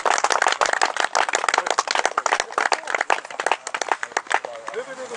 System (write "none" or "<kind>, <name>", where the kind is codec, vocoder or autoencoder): none